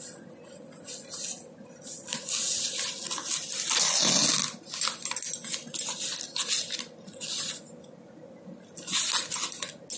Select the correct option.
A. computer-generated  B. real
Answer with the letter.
B